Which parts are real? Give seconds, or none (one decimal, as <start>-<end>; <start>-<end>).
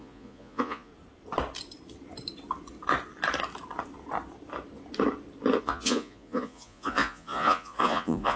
0.9-5.6